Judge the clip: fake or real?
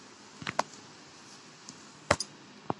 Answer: real